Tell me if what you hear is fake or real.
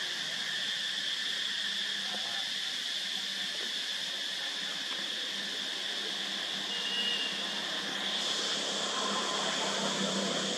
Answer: real